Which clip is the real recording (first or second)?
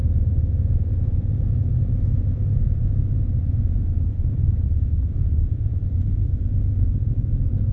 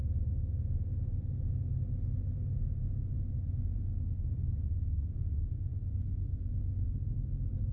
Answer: second